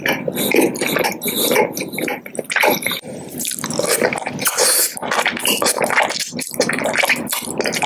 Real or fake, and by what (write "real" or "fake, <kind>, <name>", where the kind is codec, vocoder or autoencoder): real